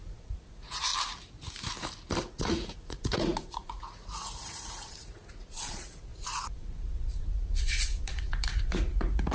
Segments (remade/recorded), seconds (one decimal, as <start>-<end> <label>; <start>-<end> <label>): 0.0-0.9 remade; 0.9-2.2 recorded; 2.2-9.3 remade